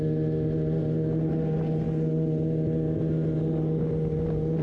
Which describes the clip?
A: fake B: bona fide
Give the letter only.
B